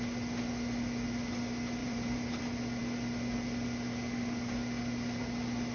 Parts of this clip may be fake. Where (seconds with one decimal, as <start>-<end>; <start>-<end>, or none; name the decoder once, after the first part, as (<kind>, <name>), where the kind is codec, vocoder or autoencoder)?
1.8-2.4 (vocoder, BigVGAN v2)